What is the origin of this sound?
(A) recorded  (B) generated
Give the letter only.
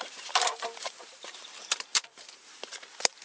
B